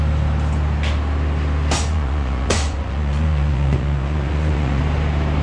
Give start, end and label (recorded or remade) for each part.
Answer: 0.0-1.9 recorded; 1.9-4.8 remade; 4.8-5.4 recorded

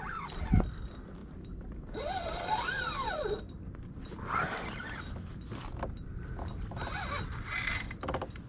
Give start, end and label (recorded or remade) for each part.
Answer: 0.0-8.5 recorded

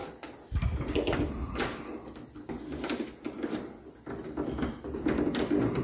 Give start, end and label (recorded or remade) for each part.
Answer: 0.0-5.8 recorded

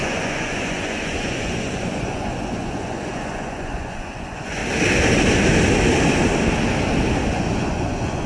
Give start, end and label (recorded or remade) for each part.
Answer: 0.0-4.6 remade; 4.6-7.3 recorded; 7.3-8.3 remade

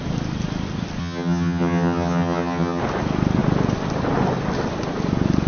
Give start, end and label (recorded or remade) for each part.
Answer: 0.0-1.0 recorded; 1.0-2.8 remade; 2.8-5.5 recorded

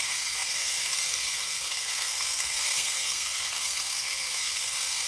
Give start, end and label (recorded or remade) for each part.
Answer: 0.0-5.1 remade

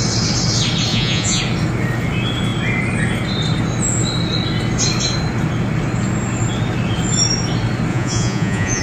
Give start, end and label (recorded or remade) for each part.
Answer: 0.0-0.9 recorded; 0.9-1.4 remade; 1.4-7.9 recorded; 7.9-8.8 remade

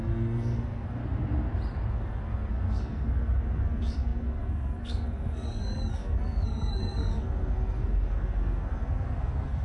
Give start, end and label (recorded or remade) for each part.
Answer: 0.0-1.0 remade; 1.0-1.9 recorded; 1.9-9.6 remade